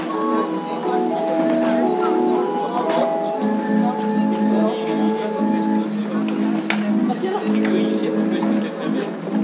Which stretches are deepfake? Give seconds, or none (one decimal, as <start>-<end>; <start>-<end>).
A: none